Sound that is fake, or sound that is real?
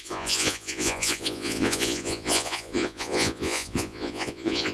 fake